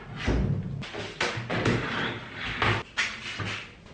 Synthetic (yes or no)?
no